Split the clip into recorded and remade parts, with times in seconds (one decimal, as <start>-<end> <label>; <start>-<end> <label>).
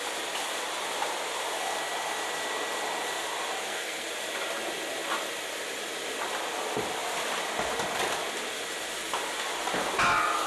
0.0-3.6 recorded; 3.6-4.1 remade; 4.1-10.5 recorded